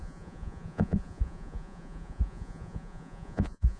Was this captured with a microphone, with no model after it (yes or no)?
no